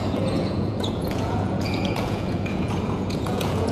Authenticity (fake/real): fake